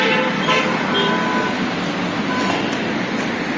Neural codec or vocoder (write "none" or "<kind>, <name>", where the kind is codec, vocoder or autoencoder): none